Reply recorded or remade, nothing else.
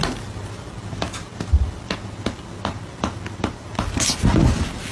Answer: recorded